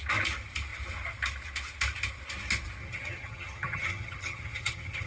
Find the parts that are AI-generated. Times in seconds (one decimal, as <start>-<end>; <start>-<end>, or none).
2.8-5.1